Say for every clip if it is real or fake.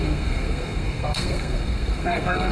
fake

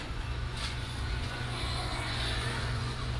fake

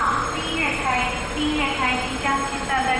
real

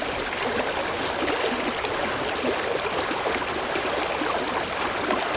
real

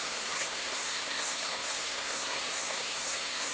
fake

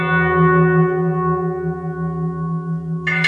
real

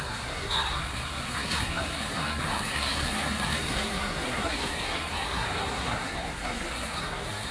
fake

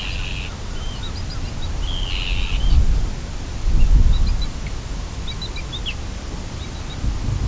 real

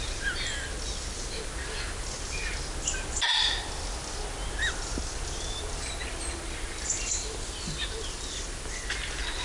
real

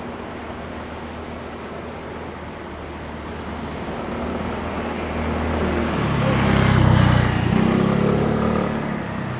real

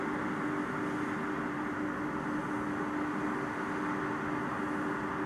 real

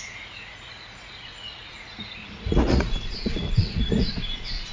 fake